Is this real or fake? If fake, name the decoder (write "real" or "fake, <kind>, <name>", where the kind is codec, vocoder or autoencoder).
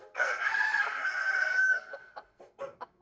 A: fake, codec, SNAC